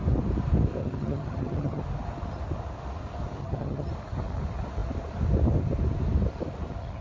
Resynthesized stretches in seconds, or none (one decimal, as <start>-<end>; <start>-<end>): 0.8-1.8; 3.4-3.9